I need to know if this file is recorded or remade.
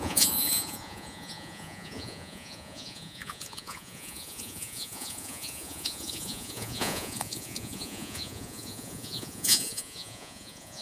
remade